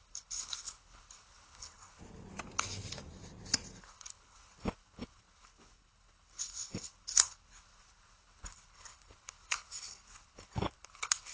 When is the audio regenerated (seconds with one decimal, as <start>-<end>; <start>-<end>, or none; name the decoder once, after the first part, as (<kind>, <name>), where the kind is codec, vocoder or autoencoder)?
0.0-2.0 (codec, HILCodec); 3.8-11.3